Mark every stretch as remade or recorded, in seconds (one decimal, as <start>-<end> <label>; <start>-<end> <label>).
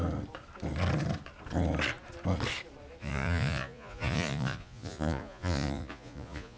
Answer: 0.0-3.0 recorded; 3.0-6.6 remade